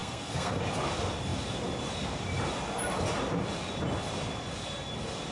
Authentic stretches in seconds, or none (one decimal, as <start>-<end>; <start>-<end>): 0.6-5.3